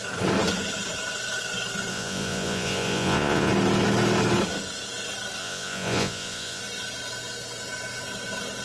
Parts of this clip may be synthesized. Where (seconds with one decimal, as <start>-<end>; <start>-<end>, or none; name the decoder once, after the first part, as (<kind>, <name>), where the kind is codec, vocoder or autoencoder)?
1.9-3.5 (vocoder, Vocos); 5.4-6.6